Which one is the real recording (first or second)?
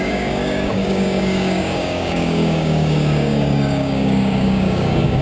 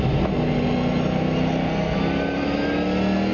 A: second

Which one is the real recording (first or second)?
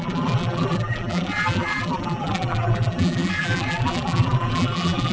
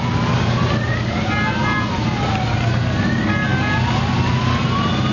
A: second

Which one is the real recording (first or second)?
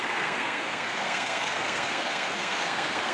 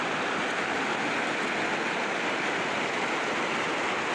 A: second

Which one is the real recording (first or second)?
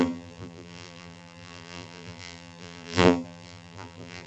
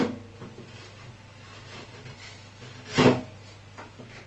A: second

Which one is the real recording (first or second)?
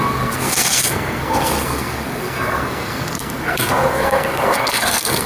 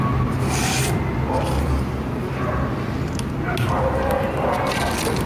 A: second